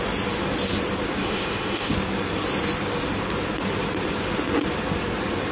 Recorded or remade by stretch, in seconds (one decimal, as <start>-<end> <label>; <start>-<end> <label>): 0.0-1.2 recorded; 1.2-1.9 remade; 1.9-5.5 recorded